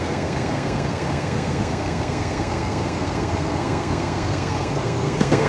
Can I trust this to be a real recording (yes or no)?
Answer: no